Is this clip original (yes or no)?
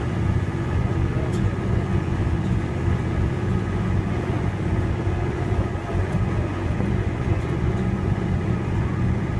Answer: no